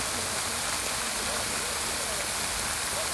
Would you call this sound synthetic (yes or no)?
no